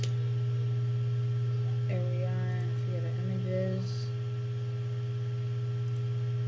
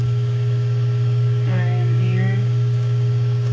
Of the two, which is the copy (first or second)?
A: second